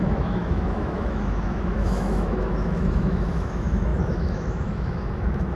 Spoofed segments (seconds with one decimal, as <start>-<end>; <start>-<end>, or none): 0.0-5.6